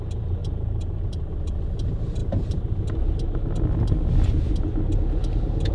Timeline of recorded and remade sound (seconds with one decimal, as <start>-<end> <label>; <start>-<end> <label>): 0.0-0.4 recorded; 0.4-1.3 remade; 1.3-5.7 recorded